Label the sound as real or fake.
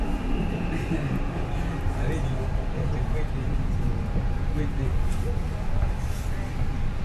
real